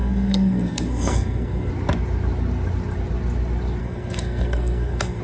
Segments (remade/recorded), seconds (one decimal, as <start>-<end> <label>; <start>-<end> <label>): 0.0-1.7 remade; 1.7-3.8 recorded; 3.8-5.2 remade

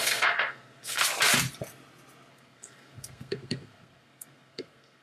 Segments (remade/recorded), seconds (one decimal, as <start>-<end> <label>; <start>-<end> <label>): 0.0-1.0 remade; 1.0-2.3 recorded; 2.3-5.0 remade

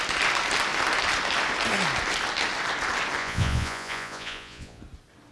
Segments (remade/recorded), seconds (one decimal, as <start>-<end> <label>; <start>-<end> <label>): 0.0-3.2 recorded; 3.2-4.8 remade; 4.8-5.3 recorded

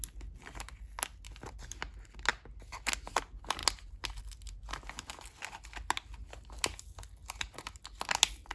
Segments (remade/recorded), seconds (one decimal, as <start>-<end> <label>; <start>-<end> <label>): 0.0-8.5 recorded

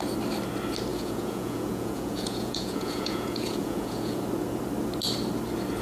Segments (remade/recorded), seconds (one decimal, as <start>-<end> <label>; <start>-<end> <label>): 0.0-0.9 recorded; 0.9-4.2 remade; 4.2-5.8 recorded

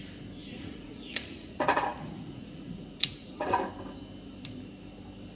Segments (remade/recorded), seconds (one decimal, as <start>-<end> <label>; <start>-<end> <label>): 0.0-0.4 recorded; 0.4-3.6 remade; 3.6-5.4 recorded

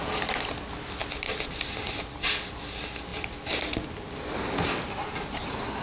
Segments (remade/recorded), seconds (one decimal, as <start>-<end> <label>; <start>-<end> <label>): 0.0-5.8 recorded